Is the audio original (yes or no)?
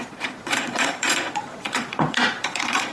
no